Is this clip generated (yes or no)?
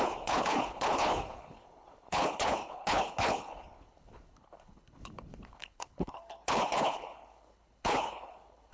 yes